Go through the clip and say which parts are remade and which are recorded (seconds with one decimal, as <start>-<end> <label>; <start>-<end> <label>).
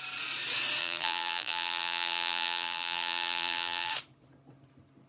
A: 0.0-0.8 recorded; 0.8-3.9 remade; 3.9-5.1 recorded